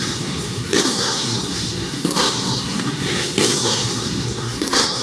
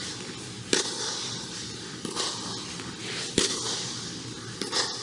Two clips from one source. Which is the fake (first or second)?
first